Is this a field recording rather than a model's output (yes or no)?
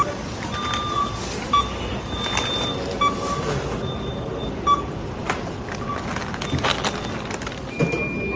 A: yes